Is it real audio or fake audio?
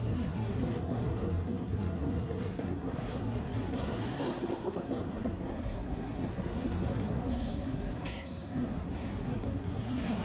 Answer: fake